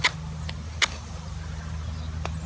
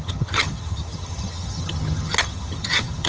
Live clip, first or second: first